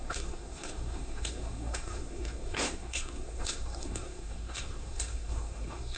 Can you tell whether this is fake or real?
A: fake